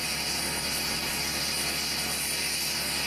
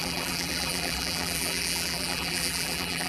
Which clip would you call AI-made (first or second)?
second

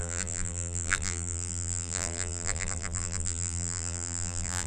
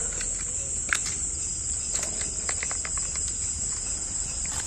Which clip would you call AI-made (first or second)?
first